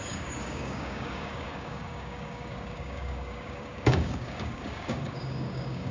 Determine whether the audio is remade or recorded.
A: remade